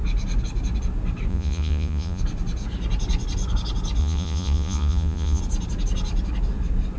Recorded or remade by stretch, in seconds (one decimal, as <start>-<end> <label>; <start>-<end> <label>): 0.0-1.3 recorded; 1.3-2.2 remade; 2.2-4.0 recorded; 4.0-5.4 remade; 5.4-7.0 recorded